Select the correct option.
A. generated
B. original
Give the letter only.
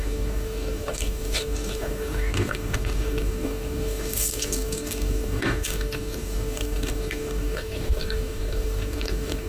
A